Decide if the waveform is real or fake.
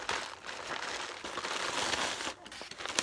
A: real